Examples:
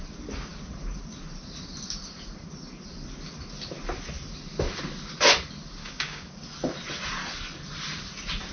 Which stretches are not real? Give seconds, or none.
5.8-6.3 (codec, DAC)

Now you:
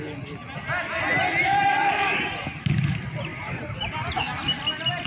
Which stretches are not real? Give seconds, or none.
1.4-2.2 (codec, DAC)

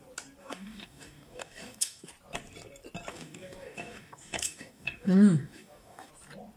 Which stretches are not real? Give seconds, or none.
0.4-2.1 (codec, DAC); 3.1-6.1

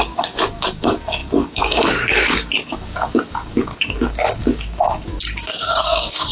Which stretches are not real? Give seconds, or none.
0.0-6.3 (codec, DAC)

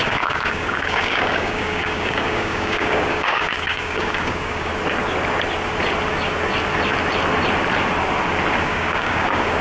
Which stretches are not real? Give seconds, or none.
0.0-4.7 (codec, DAC); 8.6-9.6

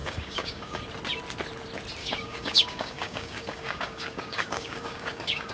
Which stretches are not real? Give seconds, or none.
0.0-0.8 (codec, DAC); 2.0-5.5